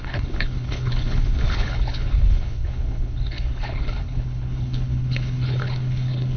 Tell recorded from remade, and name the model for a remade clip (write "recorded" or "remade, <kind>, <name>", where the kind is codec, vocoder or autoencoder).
remade, codec, HILCodec